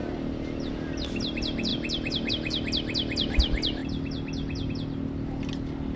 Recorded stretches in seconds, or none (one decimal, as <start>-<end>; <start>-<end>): 0.0-6.0